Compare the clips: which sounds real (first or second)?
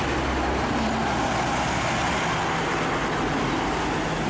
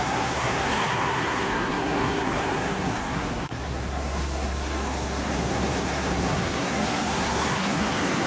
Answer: first